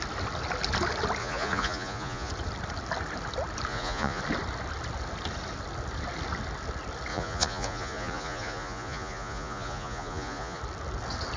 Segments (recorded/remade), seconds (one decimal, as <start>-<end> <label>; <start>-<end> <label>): 0.0-1.2 recorded; 1.2-2.3 remade; 2.3-3.7 recorded; 3.7-4.2 remade; 4.2-7.1 recorded; 7.1-10.6 remade; 10.6-11.4 recorded